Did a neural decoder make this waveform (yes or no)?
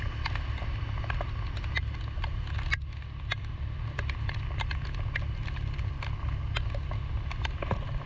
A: no